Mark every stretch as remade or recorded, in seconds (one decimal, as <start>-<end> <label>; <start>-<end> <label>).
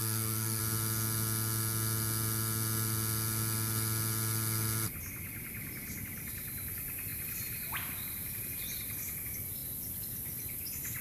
0.0-0.6 remade; 0.6-11.0 recorded